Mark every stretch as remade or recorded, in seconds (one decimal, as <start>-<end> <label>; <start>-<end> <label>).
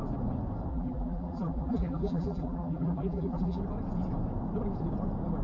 0.0-0.7 recorded; 0.7-3.6 remade; 3.6-5.4 recorded